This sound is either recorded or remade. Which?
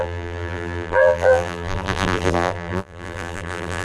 remade